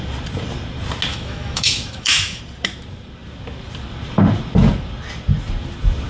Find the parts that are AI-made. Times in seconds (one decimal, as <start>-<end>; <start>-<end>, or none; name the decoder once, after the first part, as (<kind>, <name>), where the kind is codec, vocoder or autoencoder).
1.1-2.4 (autoencoder, DAC-VAE)